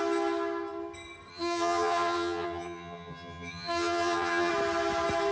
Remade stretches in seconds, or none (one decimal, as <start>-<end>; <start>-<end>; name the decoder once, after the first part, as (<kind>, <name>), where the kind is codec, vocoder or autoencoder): 1.3-4.5 (vocoder, HiFi-GAN)